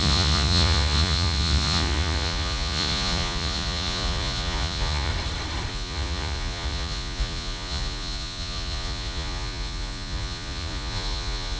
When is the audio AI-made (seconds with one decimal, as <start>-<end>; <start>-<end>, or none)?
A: 0.0-5.1; 5.7-11.6